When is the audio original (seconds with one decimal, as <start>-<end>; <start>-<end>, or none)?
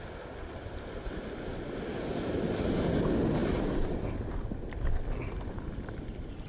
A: 0.0-3.4; 4.2-6.5